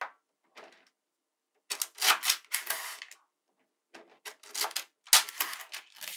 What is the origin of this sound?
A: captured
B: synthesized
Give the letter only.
A